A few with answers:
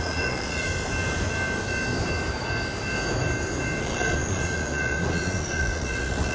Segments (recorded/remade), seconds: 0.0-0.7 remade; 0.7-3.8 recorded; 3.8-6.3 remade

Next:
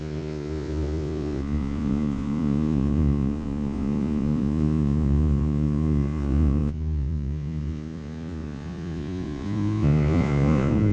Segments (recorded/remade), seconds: 0.0-10.9 remade

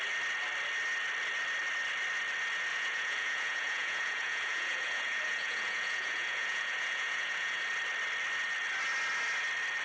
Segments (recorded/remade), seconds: 0.0-2.7 recorded; 2.7-7.6 remade; 7.6-9.8 recorded

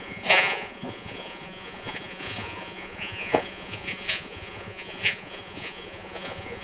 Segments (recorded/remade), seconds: 0.0-6.6 remade

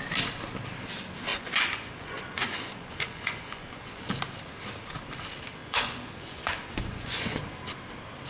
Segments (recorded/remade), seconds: 0.0-1.3 recorded; 1.3-4.1 remade; 4.1-5.6 recorded; 5.6-7.6 remade; 7.6-8.3 recorded

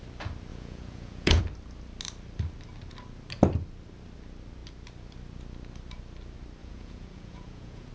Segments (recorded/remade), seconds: 0.0-0.5 recorded; 0.5-1.4 remade; 1.4-6.6 recorded; 6.6-7.9 remade

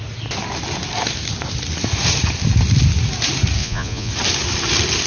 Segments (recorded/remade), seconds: 0.0-3.6 recorded; 3.6-4.1 remade; 4.1-5.1 recorded